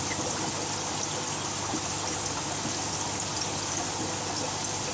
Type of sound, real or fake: real